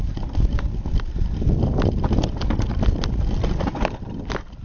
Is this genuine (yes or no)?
yes